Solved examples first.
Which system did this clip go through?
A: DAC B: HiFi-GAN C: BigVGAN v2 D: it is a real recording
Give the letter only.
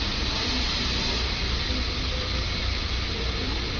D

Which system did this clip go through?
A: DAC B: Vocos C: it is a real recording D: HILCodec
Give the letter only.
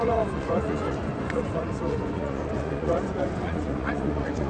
B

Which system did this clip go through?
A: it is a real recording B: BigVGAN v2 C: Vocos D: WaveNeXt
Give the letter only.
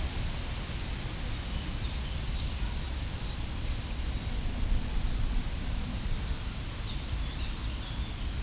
A